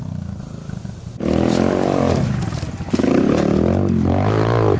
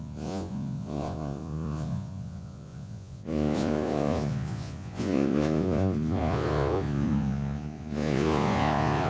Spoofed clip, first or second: second